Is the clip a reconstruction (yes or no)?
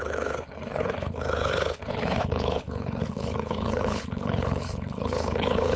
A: yes